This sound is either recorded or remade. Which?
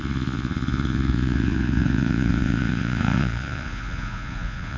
remade